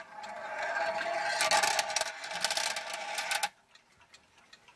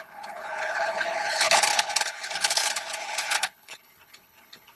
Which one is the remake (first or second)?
second